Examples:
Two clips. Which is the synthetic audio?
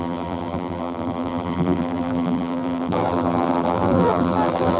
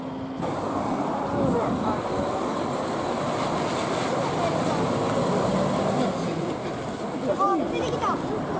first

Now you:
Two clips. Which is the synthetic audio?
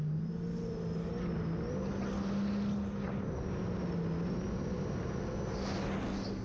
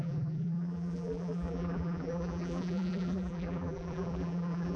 second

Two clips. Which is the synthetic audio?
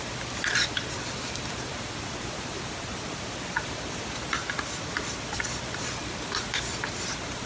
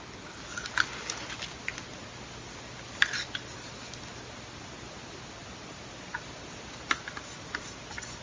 first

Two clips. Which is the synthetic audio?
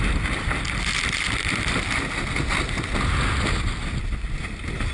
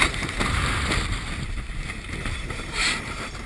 second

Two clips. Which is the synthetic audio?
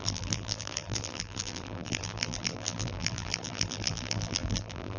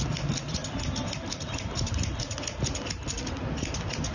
first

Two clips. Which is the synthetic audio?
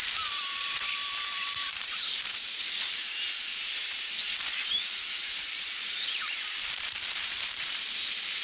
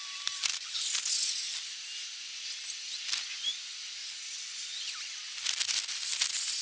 first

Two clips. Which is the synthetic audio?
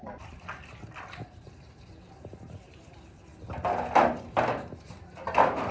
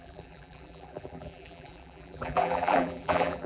second